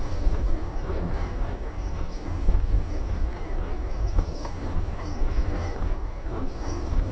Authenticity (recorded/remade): remade